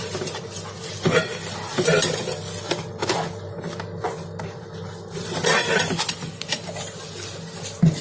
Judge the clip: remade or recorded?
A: recorded